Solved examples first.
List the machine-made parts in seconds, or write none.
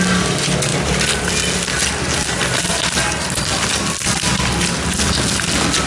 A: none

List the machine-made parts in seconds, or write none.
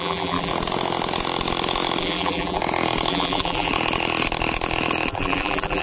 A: 0.0-0.5 (vocoder, BigVGAN v2); 2.0-2.6; 3.1-3.7; 5.1-5.8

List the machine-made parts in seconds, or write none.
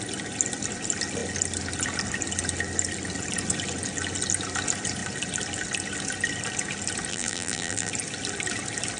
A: 7.1-7.9 (vocoder, BigVGAN v2)